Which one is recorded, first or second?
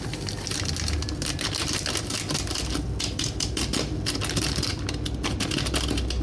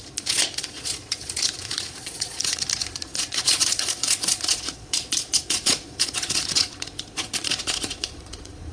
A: first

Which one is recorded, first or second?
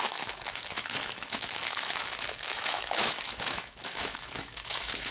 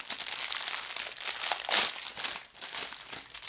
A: second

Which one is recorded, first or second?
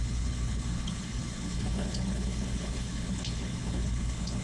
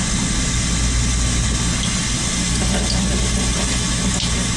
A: second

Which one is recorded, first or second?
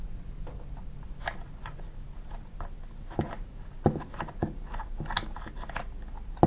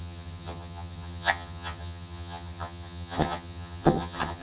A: first